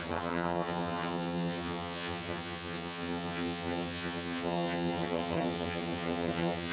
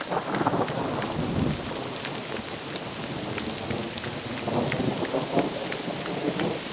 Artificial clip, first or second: first